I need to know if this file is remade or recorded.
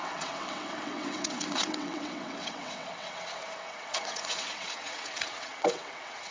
remade